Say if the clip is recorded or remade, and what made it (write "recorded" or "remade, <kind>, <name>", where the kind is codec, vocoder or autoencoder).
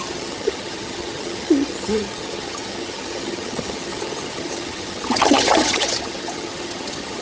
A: remade, vocoder, HiFi-GAN